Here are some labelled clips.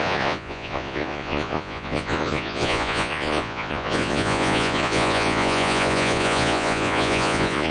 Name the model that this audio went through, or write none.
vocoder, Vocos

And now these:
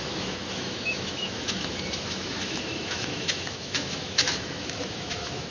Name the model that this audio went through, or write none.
autoencoder, DAC-VAE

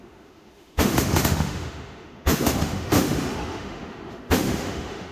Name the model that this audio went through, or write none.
autoencoder, DAC-VAE